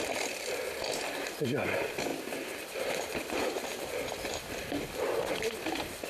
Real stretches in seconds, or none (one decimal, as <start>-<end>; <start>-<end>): 0.0-6.1